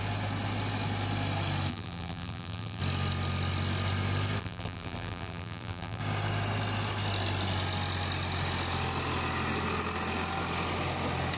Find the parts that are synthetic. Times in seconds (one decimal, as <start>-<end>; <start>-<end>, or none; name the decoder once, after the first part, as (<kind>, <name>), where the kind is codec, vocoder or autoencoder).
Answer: 1.7-2.8 (vocoder, BigVGAN v2); 4.4-6.0